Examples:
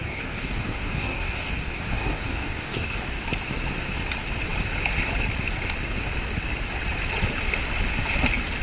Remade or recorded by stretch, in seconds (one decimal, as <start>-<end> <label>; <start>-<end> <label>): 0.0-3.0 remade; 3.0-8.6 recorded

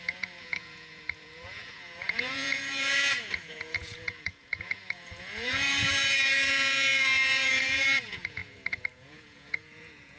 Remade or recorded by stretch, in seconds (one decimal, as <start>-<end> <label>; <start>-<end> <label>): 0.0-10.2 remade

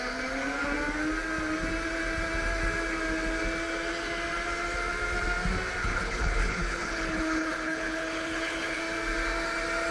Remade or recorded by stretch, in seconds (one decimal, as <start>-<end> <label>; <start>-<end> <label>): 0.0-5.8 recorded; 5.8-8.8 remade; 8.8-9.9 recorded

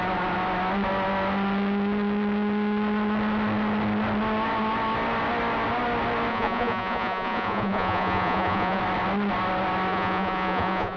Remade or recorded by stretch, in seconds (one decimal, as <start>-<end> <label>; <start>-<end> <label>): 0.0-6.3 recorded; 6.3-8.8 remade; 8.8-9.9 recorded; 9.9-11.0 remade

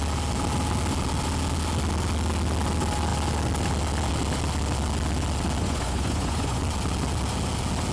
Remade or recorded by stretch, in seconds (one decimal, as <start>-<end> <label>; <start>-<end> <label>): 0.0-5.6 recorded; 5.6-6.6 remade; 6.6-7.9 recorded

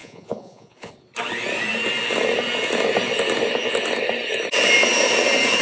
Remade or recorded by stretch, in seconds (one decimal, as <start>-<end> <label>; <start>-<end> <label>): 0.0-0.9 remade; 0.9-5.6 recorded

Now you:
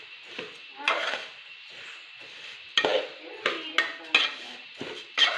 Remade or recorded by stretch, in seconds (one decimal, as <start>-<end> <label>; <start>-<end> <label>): 0.0-5.4 recorded

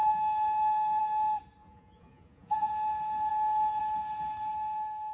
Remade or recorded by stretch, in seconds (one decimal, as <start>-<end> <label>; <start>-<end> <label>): 0.0-1.6 recorded; 1.6-2.7 remade; 2.7-5.1 recorded